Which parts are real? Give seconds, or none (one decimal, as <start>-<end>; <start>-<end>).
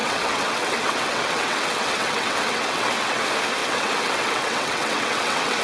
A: 3.2-3.6